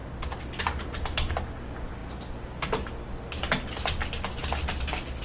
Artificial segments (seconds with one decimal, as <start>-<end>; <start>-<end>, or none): none